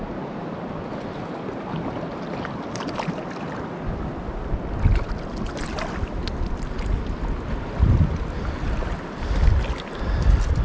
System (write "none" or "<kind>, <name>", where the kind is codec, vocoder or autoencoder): none